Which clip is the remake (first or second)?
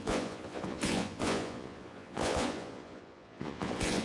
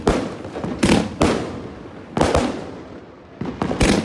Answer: first